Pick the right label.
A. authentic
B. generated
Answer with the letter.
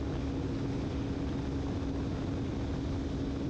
A